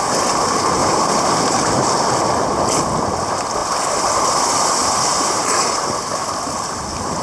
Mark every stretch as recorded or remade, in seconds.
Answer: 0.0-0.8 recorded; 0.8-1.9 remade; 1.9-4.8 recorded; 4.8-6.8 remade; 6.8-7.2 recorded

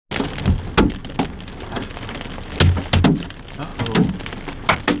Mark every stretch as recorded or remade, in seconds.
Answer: 0.0-5.0 recorded

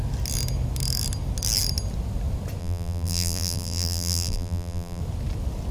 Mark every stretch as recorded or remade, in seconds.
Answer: 0.0-2.6 recorded; 2.6-5.0 remade; 5.0-5.7 recorded

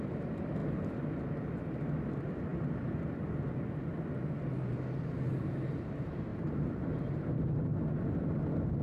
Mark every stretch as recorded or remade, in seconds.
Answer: 0.0-0.6 remade; 0.6-2.1 recorded; 2.1-2.5 remade; 2.5-5.3 recorded; 5.3-7.7 remade; 7.7-8.8 recorded